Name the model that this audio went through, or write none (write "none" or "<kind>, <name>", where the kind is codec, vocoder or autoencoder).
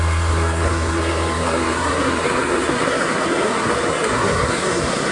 codec, SNAC